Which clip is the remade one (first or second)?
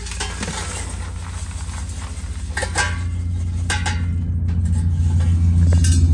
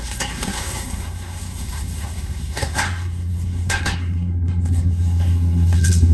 second